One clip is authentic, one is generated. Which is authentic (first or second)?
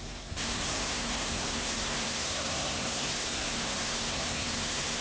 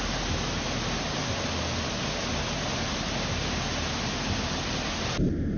second